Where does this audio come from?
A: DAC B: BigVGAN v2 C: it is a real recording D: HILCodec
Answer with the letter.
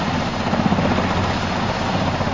C